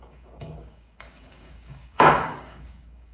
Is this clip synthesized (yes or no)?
yes